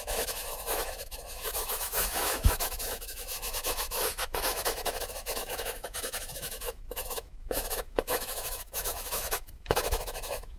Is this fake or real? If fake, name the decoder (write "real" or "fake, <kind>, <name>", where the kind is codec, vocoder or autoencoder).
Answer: fake, autoencoder, DAC-VAE